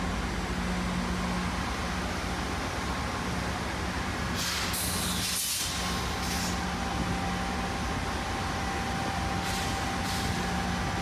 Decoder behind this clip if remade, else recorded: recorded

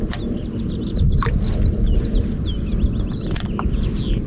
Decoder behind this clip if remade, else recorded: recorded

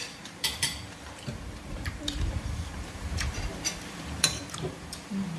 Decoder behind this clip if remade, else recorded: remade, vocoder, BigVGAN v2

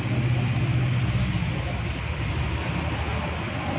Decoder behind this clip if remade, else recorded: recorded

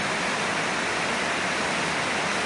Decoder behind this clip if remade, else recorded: recorded